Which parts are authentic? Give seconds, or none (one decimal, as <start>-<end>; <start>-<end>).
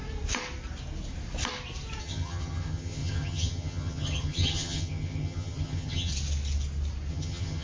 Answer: 0.0-2.0; 6.1-7.1